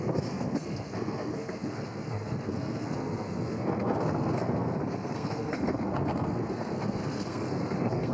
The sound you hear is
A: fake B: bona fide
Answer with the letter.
A